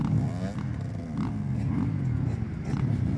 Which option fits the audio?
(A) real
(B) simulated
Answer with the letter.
A